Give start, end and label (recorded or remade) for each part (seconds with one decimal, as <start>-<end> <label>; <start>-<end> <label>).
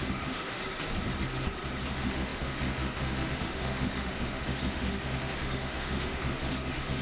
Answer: 0.0-0.6 remade; 0.6-1.9 recorded; 1.9-7.0 remade